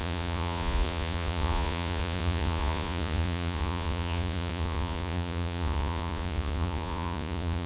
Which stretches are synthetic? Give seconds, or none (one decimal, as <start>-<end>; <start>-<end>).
0.0-7.7